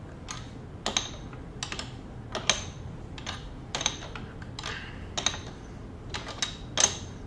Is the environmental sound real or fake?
real